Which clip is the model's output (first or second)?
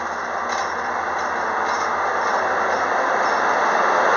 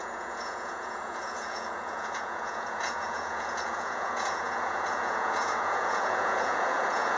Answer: second